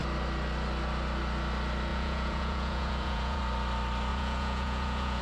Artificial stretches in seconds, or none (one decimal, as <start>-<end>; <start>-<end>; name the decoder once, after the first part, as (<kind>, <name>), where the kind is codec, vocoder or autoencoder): 1.9-3.4 (vocoder, Vocos); 4.1-5.2